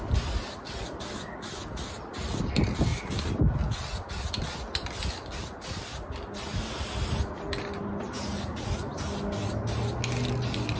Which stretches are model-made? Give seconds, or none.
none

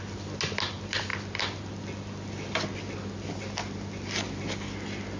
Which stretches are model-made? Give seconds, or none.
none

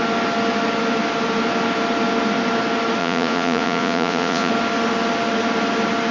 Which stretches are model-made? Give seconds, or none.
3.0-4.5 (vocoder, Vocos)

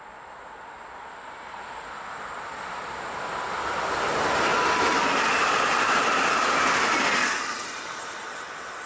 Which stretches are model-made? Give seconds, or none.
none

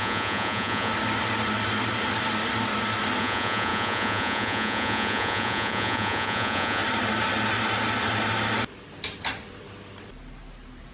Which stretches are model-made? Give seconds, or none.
0.0-0.9 (vocoder, Vocos); 3.2-6.8

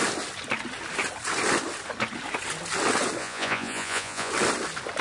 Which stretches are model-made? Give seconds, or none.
3.2-4.3 (vocoder, Vocos)

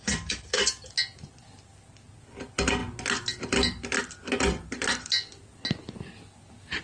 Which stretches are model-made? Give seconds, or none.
none

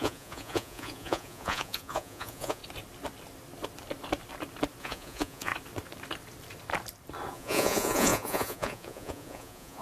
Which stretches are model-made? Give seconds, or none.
0.0-2.6 (vocoder, Vocos); 4.8-5.5; 7.3-9.8